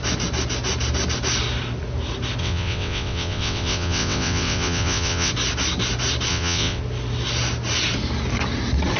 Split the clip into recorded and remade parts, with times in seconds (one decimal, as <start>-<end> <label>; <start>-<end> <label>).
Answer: 0.0-2.4 recorded; 2.4-5.3 remade; 5.3-6.3 recorded; 6.3-6.8 remade; 6.8-9.0 recorded